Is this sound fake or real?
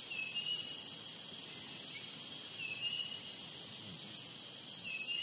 real